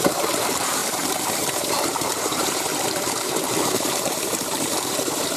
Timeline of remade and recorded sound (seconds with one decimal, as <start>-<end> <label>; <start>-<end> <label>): 0.0-5.4 remade